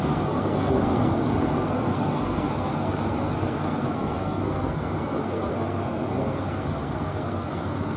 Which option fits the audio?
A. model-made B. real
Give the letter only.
A